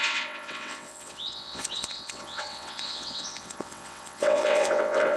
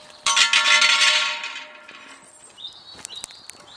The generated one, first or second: first